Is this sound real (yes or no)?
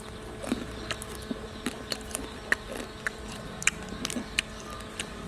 yes